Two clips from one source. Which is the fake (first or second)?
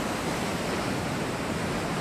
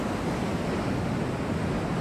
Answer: first